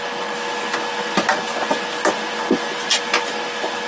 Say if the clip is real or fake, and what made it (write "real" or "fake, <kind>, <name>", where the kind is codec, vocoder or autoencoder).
real